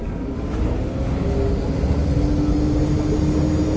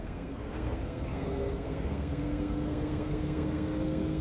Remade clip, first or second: second